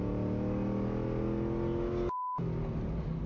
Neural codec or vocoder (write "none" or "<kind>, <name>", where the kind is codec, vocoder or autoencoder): none